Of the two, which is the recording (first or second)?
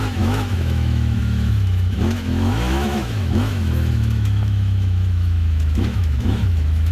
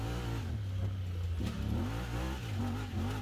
second